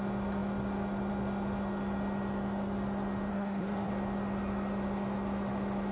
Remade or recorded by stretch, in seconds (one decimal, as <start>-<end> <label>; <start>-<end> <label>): 0.0-3.3 recorded; 3.3-3.9 remade; 3.9-5.9 recorded